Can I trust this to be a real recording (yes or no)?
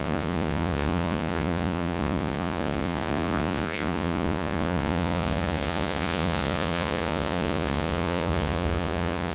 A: no